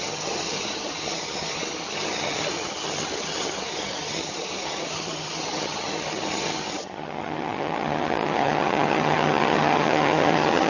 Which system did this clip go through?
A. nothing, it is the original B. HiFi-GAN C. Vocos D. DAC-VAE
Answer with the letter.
B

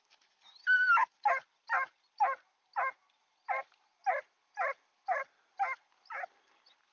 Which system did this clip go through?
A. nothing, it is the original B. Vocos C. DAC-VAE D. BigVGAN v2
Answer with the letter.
A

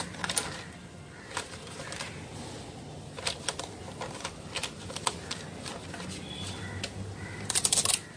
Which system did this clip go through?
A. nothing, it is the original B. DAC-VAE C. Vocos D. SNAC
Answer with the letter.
A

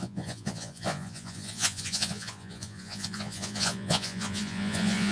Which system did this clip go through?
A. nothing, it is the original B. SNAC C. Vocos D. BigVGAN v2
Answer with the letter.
C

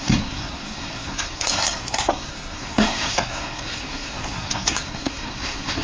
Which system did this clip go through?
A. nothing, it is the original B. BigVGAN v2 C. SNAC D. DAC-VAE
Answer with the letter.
C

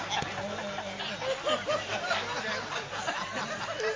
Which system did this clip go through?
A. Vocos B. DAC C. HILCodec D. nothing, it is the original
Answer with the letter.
D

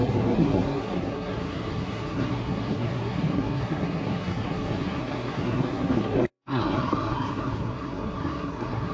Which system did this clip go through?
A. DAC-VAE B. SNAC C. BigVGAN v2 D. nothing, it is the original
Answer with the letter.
B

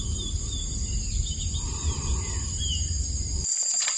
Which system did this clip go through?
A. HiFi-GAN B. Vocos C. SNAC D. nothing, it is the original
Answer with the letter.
D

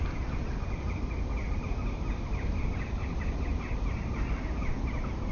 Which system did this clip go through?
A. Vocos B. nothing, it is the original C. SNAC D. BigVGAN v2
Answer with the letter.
B